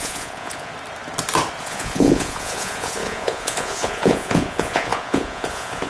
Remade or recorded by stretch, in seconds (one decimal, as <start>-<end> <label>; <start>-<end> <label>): 0.0-0.7 remade; 0.7-1.6 recorded; 1.6-5.9 remade